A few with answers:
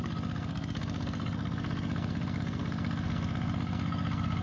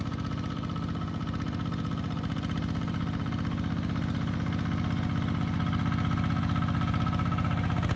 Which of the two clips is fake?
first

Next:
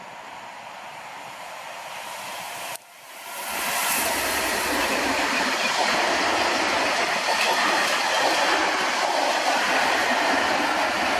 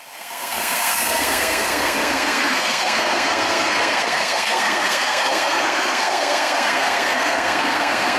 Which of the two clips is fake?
second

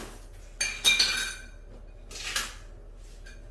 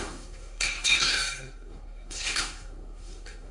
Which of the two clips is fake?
second